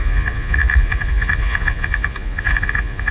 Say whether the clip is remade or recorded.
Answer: remade